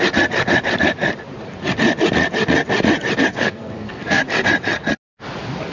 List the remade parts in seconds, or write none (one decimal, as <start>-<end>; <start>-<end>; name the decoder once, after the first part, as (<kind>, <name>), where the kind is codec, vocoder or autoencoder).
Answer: 3.3-4.2 (codec, SNAC)